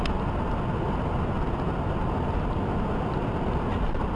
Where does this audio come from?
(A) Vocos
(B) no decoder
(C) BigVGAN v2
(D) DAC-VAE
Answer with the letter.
B